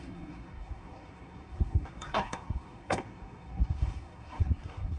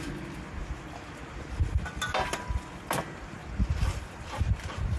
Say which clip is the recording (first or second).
second